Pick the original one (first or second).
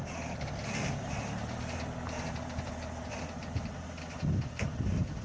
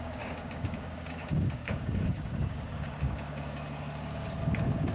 first